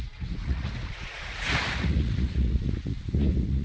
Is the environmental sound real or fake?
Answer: fake